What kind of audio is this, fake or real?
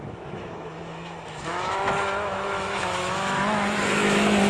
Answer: fake